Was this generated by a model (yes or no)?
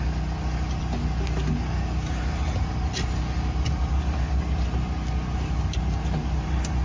no